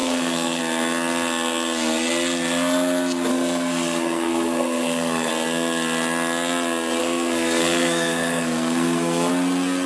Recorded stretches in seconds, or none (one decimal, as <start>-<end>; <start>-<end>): 0.6-3.3; 5.3-7.0; 9.3-9.9